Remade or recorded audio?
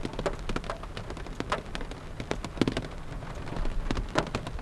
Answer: recorded